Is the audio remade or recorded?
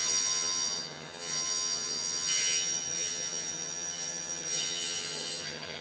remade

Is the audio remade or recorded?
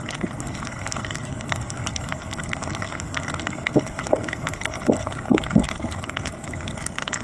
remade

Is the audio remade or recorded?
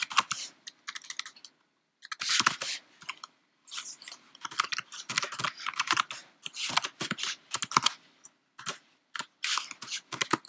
recorded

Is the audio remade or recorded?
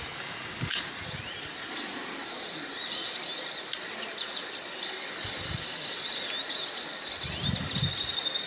recorded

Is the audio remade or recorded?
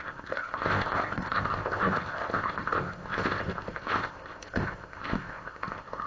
remade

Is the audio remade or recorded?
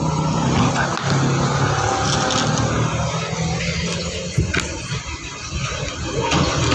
recorded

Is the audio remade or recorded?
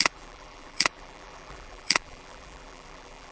remade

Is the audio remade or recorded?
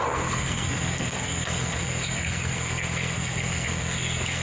remade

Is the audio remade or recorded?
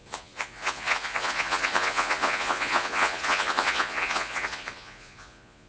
remade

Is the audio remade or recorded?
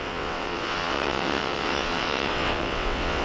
remade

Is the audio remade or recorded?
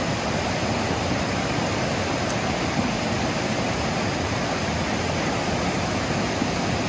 recorded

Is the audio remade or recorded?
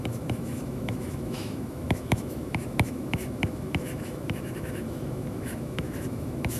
remade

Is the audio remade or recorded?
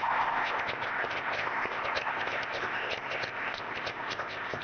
remade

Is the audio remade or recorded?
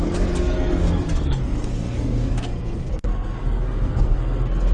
remade